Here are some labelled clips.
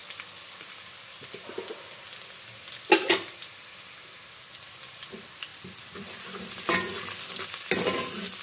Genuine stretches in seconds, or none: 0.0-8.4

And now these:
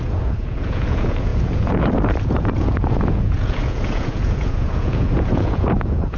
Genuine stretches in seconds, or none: none